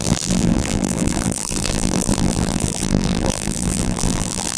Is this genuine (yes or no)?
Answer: no